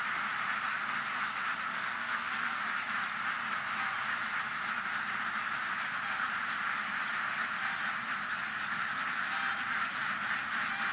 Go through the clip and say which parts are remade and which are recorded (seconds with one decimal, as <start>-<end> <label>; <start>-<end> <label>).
0.0-1.7 recorded; 1.7-2.6 remade; 2.6-10.9 recorded